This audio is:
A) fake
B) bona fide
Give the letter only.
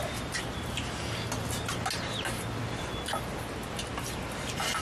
B